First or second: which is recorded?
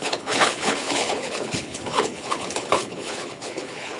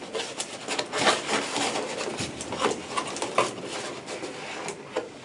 second